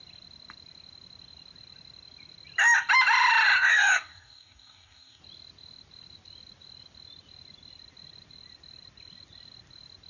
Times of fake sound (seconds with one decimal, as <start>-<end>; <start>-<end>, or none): 3.7-5.2